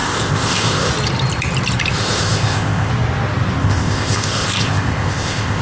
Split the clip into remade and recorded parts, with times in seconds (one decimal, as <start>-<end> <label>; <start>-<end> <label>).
0.0-0.9 remade; 0.9-2.0 recorded; 2.0-2.9 remade; 2.9-3.6 recorded; 3.6-5.6 remade